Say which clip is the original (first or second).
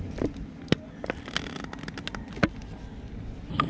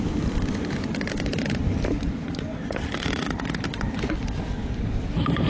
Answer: first